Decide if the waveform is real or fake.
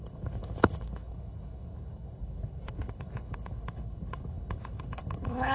fake